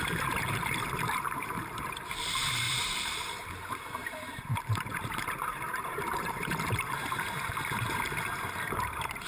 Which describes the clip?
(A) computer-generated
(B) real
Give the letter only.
A